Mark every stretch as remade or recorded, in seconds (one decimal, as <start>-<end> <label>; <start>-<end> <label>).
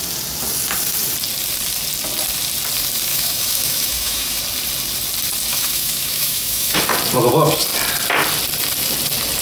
0.0-3.1 recorded; 3.1-4.4 remade; 4.4-5.5 recorded; 5.5-6.8 remade; 6.8-9.4 recorded